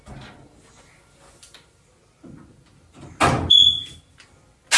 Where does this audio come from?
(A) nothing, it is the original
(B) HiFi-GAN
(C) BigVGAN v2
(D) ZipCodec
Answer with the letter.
A